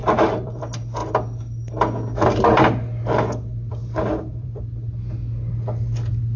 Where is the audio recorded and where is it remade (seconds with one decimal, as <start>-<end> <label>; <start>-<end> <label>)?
0.0-0.6 remade; 0.6-3.8 recorded; 3.8-4.6 remade; 4.6-6.4 recorded